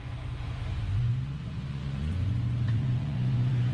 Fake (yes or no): yes